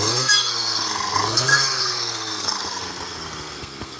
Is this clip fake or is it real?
fake